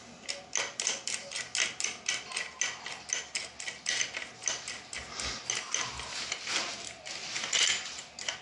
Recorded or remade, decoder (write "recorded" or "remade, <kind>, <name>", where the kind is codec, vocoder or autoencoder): recorded